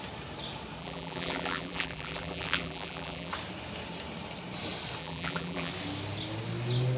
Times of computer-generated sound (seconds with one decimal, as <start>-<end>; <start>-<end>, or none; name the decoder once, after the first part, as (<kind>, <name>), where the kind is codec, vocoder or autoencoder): 0.8-3.3 (vocoder, BigVGAN v2); 5.0-5.7

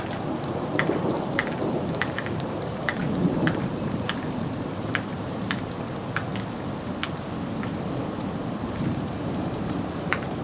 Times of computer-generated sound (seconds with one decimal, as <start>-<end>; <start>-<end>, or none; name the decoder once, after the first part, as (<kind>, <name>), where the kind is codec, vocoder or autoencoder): 0.0-6.3 (vocoder, BigVGAN v2); 8.1-10.4

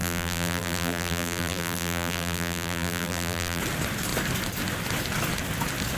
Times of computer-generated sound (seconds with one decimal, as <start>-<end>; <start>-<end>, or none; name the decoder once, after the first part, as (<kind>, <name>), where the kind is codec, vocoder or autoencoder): 0.0-3.6 (vocoder, BigVGAN v2)

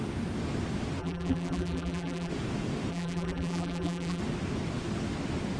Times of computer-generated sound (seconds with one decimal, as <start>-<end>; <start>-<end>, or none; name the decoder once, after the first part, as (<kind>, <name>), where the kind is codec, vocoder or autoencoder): 1.0-2.3 (vocoder, BigVGAN v2); 2.9-4.2

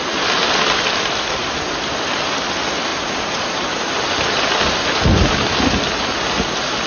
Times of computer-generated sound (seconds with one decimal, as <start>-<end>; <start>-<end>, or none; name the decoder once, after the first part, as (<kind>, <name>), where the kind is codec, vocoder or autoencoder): 2.9-3.9 (vocoder, BigVGAN v2); 5.2-5.8

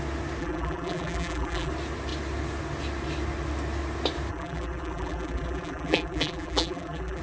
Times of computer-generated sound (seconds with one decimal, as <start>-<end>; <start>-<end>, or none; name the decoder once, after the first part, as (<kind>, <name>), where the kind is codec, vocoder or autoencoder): 0.4-1.7 (vocoder, BigVGAN v2); 4.3-7.2

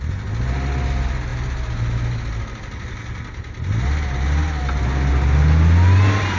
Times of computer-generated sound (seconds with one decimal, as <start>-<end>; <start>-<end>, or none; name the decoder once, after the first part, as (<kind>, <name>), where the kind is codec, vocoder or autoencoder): none